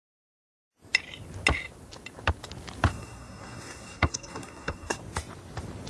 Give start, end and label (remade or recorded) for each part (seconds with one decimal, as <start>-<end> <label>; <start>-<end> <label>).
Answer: 0.0-2.9 recorded; 2.9-5.0 remade; 5.0-5.9 recorded